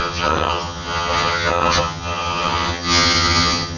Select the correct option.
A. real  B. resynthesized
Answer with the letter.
B